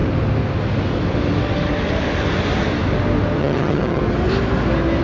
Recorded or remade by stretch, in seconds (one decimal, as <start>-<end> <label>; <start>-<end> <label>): 0.0-3.4 recorded; 3.4-4.0 remade; 4.0-5.0 recorded

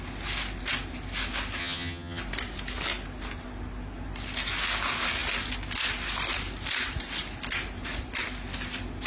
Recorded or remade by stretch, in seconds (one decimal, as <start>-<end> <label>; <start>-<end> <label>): 0.0-1.6 recorded; 1.6-2.2 remade; 2.2-9.1 recorded

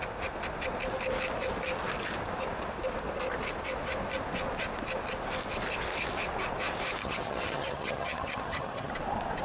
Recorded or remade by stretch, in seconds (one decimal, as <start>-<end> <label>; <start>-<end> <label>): 0.0-7.0 recorded; 7.0-8.9 remade; 8.9-9.4 recorded